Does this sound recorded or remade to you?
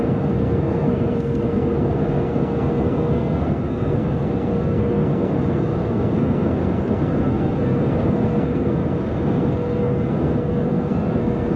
remade